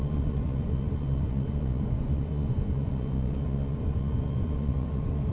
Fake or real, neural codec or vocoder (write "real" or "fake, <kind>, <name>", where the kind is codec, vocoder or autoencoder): fake, vocoder, Vocos